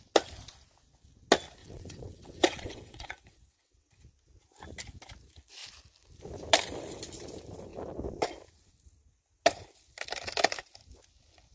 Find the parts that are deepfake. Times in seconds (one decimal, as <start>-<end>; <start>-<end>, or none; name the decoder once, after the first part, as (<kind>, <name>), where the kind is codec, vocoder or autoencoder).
1.6-3.9 (vocoder, WaveNeXt)